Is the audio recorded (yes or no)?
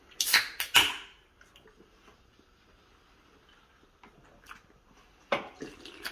yes